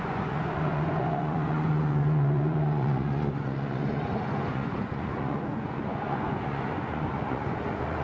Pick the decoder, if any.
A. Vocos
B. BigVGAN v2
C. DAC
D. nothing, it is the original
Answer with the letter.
A